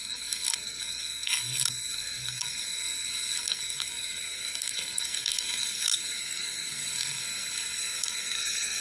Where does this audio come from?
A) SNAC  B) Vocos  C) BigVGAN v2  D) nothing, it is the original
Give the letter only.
A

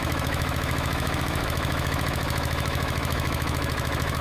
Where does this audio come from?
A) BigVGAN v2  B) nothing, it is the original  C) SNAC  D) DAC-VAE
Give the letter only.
D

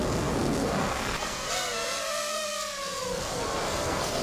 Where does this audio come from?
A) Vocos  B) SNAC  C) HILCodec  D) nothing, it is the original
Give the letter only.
B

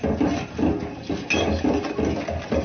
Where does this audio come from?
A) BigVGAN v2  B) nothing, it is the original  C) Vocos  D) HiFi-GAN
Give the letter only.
B